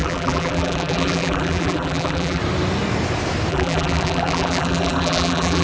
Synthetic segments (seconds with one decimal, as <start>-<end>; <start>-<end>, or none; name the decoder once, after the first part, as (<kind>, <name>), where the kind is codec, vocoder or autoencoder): 0.0-2.4 (vocoder, BigVGAN v2); 3.5-5.6